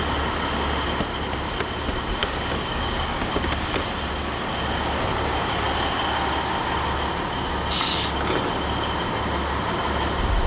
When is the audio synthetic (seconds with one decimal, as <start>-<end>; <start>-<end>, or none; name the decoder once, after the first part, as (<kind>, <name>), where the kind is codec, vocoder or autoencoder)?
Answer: 2.2-3.3 (codec, DAC)